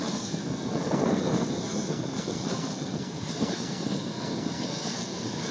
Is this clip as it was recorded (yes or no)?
no